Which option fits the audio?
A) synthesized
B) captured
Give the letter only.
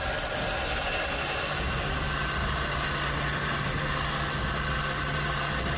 B